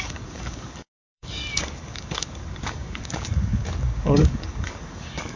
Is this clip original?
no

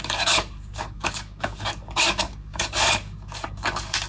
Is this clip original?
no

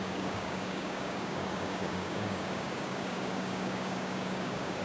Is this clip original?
no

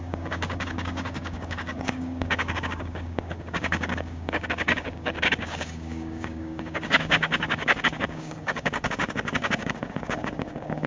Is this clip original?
no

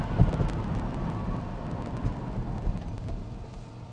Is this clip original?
yes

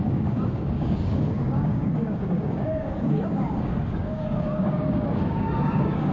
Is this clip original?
no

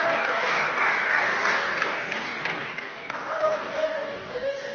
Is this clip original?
no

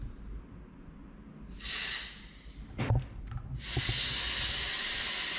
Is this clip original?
yes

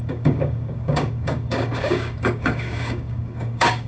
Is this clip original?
no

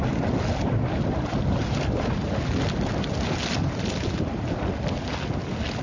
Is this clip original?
yes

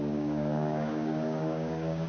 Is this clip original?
no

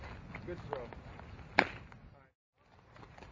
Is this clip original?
yes